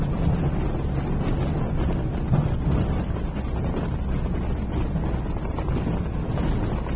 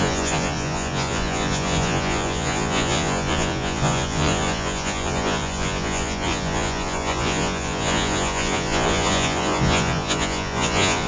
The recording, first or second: first